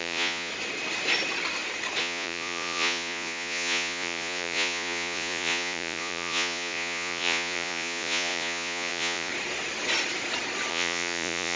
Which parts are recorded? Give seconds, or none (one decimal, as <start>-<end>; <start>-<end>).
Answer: 0.5-2.0; 9.3-10.7